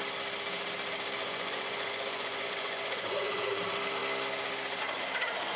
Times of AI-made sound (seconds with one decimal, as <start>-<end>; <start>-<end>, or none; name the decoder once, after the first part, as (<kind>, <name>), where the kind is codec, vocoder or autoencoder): 1.2-3.6 (vocoder, Vocos)